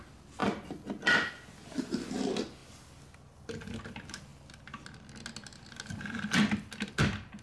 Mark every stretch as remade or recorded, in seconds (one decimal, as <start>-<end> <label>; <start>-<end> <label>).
0.0-7.4 recorded